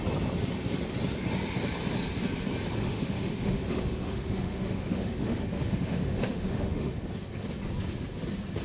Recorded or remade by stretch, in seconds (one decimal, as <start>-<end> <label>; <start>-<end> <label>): 0.0-2.8 recorded; 2.8-7.0 remade; 7.0-8.6 recorded